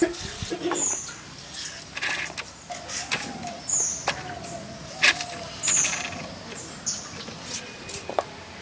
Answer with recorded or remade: recorded